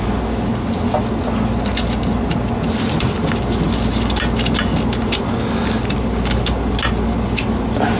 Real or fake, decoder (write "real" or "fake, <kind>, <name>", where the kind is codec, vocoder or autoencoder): real